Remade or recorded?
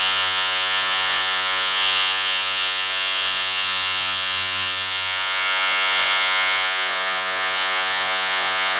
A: remade